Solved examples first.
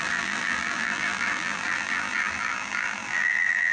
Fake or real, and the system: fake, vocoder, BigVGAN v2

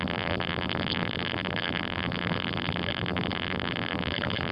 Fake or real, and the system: fake, vocoder, BigVGAN v2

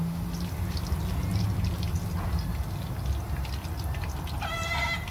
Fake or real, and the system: real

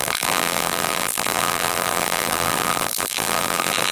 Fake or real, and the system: fake, vocoder, BigVGAN v2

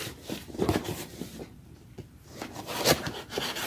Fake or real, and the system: fake, vocoder, BigVGAN v2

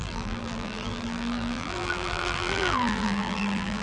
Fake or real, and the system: fake, vocoder, BigVGAN v2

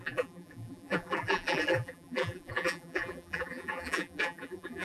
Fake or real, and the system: fake, vocoder, BigVGAN v2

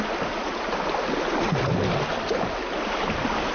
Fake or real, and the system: real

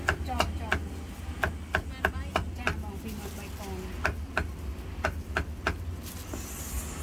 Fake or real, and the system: real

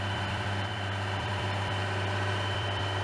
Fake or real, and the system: fake, vocoder, BigVGAN v2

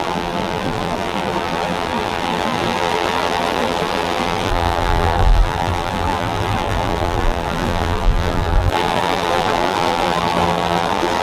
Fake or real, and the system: fake, vocoder, BigVGAN v2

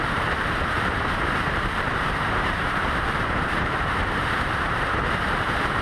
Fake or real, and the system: fake, vocoder, BigVGAN v2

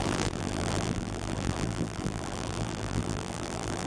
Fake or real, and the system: fake, vocoder, BigVGAN v2